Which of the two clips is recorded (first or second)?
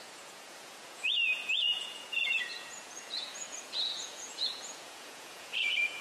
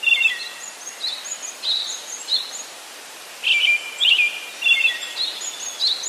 second